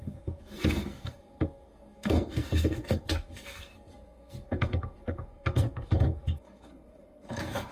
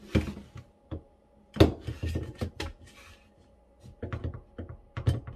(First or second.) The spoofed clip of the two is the first